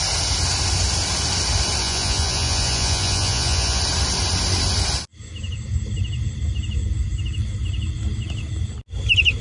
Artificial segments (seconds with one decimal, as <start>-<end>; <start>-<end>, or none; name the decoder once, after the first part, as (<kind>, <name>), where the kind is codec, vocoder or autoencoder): 1.8-3.8 (vocoder, Vocos)